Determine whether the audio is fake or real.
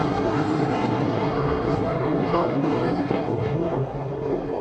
fake